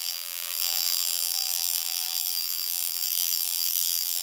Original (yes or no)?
no